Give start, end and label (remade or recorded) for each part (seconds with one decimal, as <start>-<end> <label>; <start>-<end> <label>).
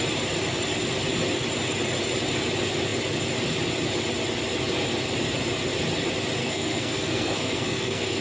0.0-6.4 recorded; 6.4-8.2 remade